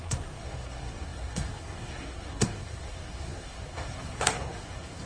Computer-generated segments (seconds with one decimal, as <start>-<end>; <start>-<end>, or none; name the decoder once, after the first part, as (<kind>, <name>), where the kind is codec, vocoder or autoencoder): 0.0-5.1 (codec, SNAC)